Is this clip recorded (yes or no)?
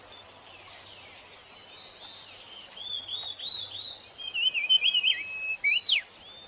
yes